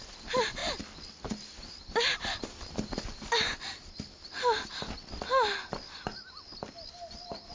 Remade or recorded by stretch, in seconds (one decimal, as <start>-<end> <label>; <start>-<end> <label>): 0.0-7.5 recorded